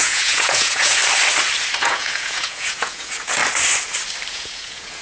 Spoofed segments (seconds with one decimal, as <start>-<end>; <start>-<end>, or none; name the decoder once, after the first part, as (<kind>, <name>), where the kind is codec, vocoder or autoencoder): 0.0-1.0 (vocoder, Vocos); 1.8-3.4; 4.3-5.0

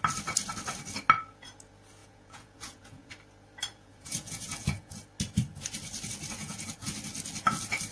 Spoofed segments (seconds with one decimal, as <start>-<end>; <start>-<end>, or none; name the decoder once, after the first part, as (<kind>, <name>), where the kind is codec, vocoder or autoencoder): 2.0-3.1 (vocoder, Vocos); 3.7-5.0; 6.4-6.9

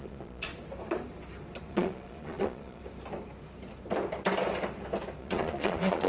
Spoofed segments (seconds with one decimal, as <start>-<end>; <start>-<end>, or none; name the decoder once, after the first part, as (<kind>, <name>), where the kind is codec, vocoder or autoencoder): 0.0-0.5 (vocoder, Vocos); 1.7-2.8; 5.2-6.1

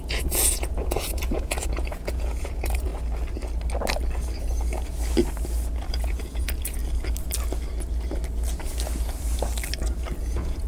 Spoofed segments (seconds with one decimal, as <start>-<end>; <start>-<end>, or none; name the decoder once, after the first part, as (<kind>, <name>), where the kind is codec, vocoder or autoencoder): 0.0-2.9 (vocoder, Vocos); 5.9-6.8; 10.2-10.7

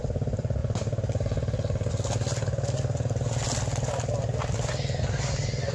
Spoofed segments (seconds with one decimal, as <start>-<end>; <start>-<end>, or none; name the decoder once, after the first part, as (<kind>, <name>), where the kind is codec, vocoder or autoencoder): none

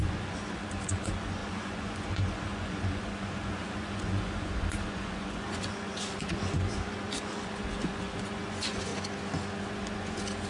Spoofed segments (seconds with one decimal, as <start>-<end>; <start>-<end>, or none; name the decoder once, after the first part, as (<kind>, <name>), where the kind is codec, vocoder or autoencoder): 0.0-8.9 (vocoder, Vocos); 9.6-10.5

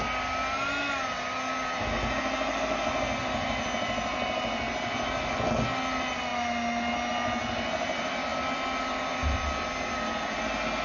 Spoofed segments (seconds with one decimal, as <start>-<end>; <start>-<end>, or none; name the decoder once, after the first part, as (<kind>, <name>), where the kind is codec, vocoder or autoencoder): none

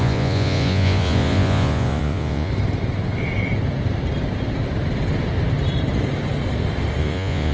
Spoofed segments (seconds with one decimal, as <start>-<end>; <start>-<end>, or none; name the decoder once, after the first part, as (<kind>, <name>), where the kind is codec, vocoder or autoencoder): 0.0-2.5 (vocoder, Vocos); 7.0-7.5